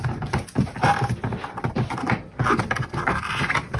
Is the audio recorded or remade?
recorded